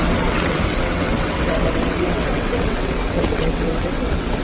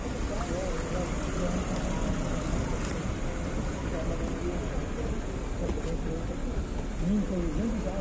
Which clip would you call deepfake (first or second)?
first